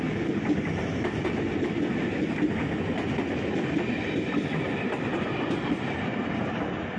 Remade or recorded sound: recorded